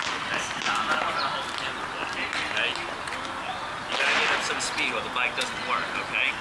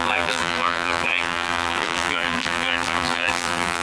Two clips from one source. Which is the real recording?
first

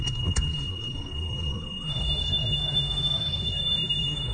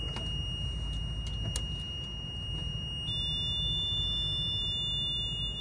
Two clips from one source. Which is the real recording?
second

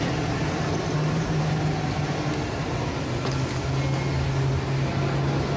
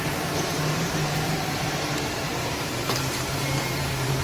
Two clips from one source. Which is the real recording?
first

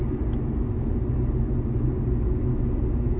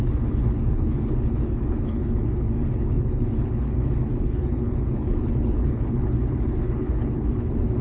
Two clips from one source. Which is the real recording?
first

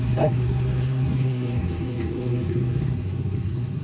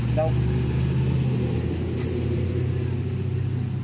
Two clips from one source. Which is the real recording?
second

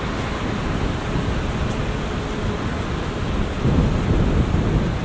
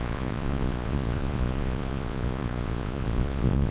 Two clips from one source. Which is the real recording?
first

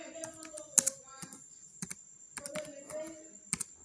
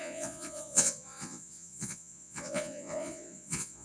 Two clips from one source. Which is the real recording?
first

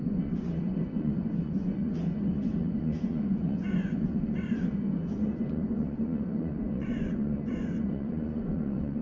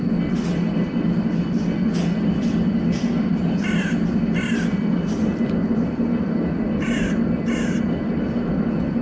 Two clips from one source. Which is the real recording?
second